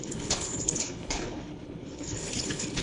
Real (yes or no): no